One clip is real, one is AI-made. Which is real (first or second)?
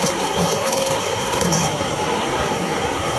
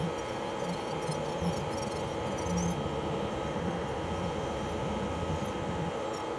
second